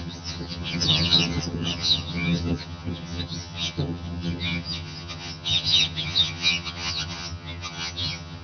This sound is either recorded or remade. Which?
remade